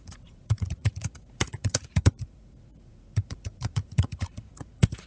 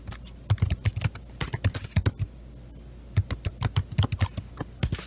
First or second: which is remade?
first